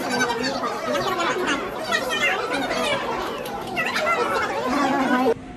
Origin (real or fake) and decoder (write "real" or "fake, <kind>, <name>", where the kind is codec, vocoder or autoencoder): real